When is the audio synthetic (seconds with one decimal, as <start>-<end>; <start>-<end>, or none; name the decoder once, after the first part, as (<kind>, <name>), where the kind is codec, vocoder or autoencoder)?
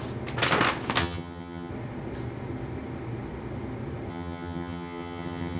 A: 1.0-1.7 (vocoder, HiFi-GAN); 4.1-5.6